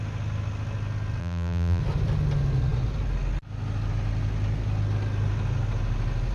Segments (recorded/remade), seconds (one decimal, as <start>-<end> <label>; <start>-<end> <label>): 0.0-1.2 recorded; 1.2-1.8 remade; 1.8-6.3 recorded